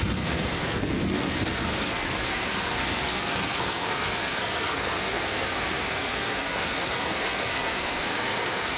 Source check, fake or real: fake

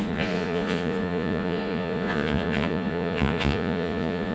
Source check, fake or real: fake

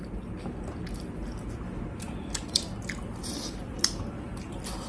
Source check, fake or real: real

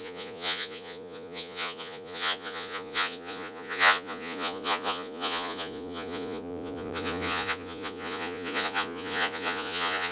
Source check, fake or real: fake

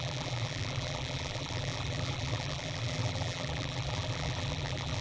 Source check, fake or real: fake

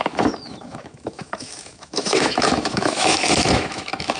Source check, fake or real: fake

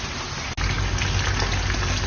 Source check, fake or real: real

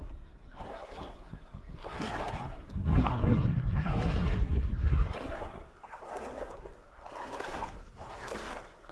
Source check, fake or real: fake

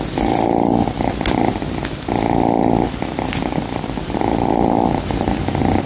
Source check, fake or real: real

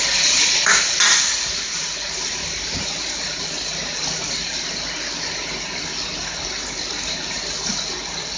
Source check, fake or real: real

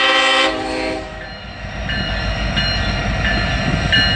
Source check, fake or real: real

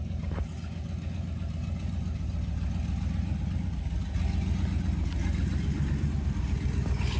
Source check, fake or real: real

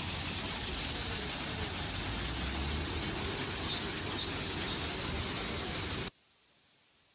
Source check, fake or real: real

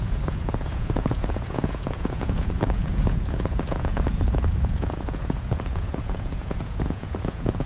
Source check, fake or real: fake